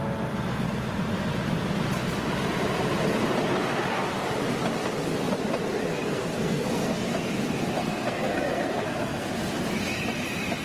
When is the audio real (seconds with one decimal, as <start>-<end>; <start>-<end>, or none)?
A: 0.0-5.9; 7.1-7.8; 9.3-10.6